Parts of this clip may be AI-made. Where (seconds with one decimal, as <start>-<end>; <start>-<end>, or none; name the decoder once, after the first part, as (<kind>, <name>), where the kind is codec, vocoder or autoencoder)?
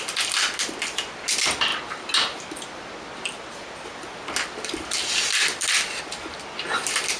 none